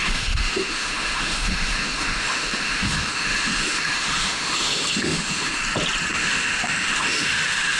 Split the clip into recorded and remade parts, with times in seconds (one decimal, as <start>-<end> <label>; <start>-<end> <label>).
0.0-5.6 remade; 5.6-6.1 recorded; 6.1-7.8 remade